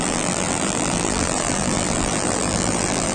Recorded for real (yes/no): no